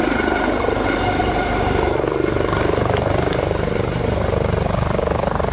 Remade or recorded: recorded